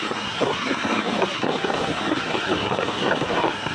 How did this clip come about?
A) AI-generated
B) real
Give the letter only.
A